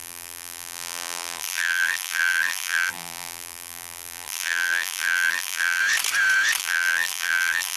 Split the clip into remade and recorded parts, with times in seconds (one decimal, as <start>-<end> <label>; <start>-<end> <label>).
0.0-5.8 remade; 5.8-6.6 recorded; 6.6-7.8 remade